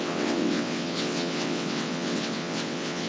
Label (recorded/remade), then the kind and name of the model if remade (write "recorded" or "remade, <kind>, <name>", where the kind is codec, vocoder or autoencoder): remade, vocoder, WaveNeXt